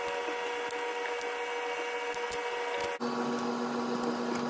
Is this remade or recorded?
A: recorded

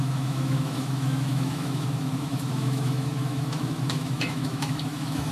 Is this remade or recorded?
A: remade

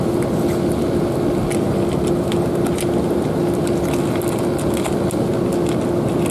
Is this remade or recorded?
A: recorded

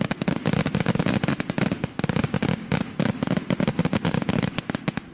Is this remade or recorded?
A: recorded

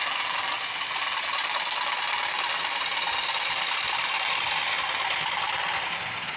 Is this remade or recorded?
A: recorded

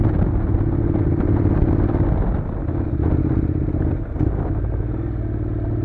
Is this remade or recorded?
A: recorded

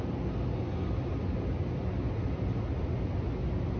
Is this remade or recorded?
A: recorded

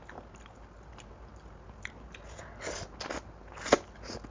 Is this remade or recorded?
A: recorded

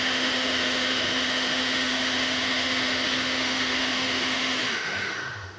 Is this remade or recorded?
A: remade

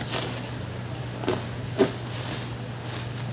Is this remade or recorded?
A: recorded